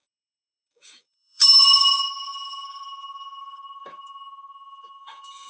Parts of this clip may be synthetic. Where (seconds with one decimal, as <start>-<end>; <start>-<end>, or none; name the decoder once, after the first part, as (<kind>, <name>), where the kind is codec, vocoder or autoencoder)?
0.0-5.5 (codec, DAC)